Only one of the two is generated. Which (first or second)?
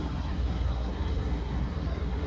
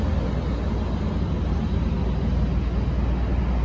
first